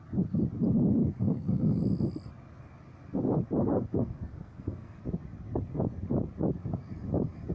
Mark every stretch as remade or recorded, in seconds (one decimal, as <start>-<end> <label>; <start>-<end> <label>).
0.0-1.0 recorded; 1.0-1.8 remade; 1.8-3.6 recorded; 3.6-5.0 remade; 5.0-7.5 recorded